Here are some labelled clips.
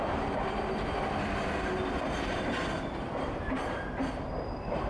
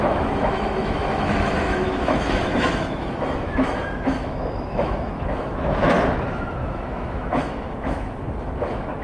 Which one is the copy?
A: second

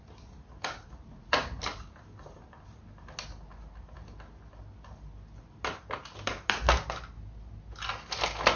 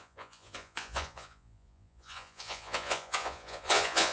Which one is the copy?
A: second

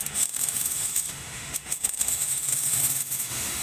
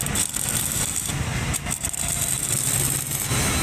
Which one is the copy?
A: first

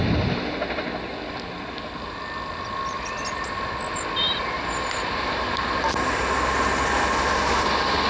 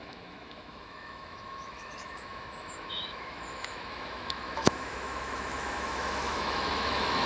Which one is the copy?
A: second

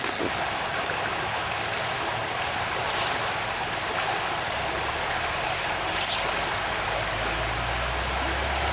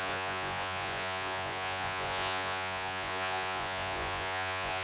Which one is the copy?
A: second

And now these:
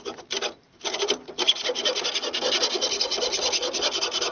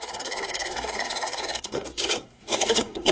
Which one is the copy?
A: second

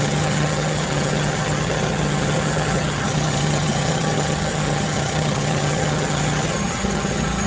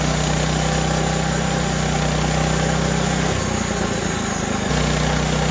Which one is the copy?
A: first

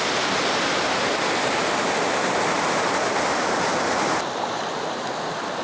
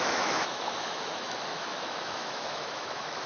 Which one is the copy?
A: second